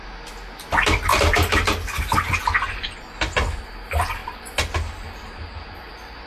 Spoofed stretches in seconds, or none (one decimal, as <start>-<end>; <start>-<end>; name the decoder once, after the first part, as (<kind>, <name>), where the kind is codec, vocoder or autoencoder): none